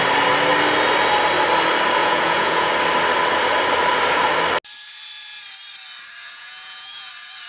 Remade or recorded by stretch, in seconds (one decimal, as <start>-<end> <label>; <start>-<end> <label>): 0.0-2.0 recorded; 2.0-2.7 remade; 2.7-6.2 recorded; 6.2-7.1 remade; 7.1-7.5 recorded